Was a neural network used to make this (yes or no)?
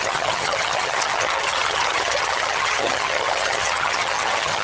yes